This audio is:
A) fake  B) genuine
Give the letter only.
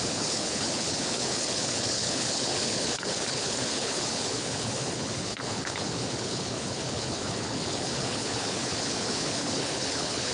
A